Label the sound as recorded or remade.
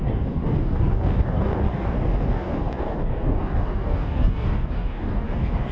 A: remade